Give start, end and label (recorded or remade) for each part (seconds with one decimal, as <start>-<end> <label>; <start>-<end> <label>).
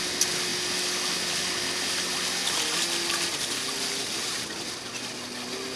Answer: 0.0-5.8 recorded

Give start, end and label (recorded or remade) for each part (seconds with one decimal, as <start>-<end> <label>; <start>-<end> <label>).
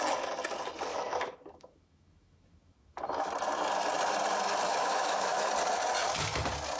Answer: 0.0-0.9 recorded; 0.9-3.3 remade; 3.3-4.7 recorded; 4.7-5.5 remade; 5.5-6.8 recorded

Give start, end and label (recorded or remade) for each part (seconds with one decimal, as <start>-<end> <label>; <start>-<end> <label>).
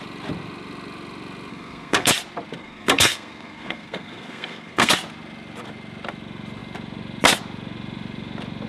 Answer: 0.0-1.5 recorded; 1.5-2.1 remade; 2.1-2.6 recorded; 2.6-4.9 remade; 4.9-8.7 recorded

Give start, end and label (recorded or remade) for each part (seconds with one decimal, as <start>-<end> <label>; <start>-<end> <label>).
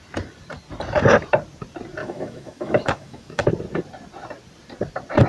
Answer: 0.0-2.0 recorded; 2.0-3.5 remade; 3.5-5.3 recorded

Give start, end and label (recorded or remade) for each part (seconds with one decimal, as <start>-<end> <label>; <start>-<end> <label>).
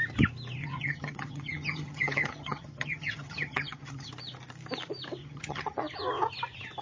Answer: 0.0-0.6 recorded; 0.6-4.1 remade; 4.1-5.2 recorded; 5.2-5.8 remade; 5.8-6.8 recorded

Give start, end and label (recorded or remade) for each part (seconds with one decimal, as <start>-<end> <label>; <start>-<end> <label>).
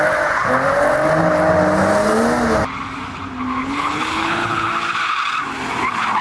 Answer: 0.0-3.6 recorded; 3.6-4.7 remade; 4.7-6.2 recorded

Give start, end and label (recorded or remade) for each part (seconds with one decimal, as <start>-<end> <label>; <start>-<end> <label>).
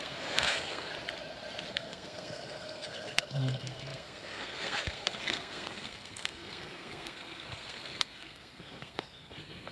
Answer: 0.0-0.9 remade; 0.9-1.7 recorded; 1.7-9.7 remade